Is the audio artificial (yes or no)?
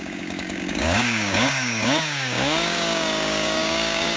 yes